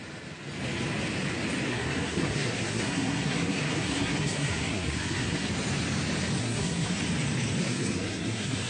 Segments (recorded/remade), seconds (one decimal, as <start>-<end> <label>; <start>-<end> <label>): 0.0-1.7 recorded; 1.7-5.5 remade; 5.5-6.4 recorded; 6.4-7.0 remade; 7.0-7.6 recorded; 7.6-8.7 remade